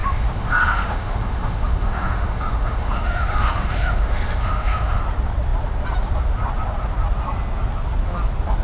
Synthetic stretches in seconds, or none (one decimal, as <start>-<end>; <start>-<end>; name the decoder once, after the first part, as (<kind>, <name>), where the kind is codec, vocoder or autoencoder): 0.0-5.0 (autoencoder, DAC-VAE)